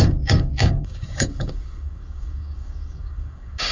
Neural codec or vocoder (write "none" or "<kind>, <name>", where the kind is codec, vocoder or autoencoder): codec, DAC